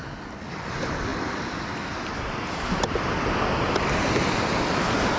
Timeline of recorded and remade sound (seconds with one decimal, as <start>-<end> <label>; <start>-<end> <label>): 0.0-5.2 recorded